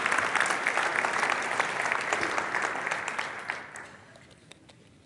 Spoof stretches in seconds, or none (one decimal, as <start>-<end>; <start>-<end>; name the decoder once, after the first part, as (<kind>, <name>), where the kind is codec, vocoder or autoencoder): none